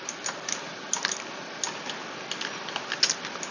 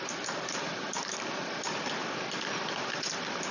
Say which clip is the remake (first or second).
second